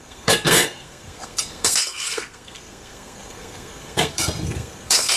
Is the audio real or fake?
fake